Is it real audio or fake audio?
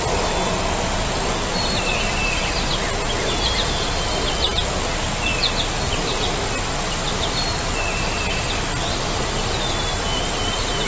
real